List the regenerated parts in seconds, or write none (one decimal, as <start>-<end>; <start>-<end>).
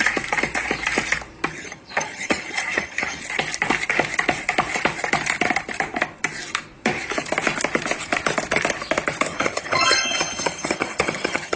1.5-3.2; 9.3-11.6